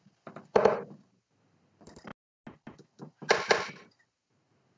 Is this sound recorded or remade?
recorded